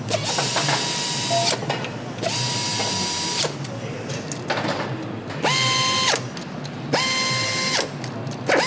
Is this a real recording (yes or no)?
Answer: yes